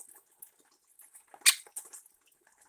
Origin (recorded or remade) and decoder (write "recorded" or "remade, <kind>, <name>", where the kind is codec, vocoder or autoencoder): recorded